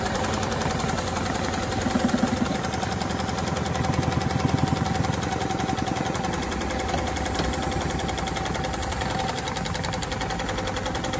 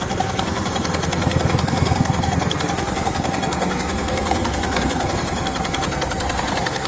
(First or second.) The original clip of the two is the first